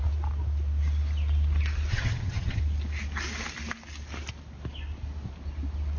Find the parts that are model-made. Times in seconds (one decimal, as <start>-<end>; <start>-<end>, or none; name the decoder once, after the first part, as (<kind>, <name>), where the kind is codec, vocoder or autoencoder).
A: 1.9-2.6 (vocoder, HiFi-GAN)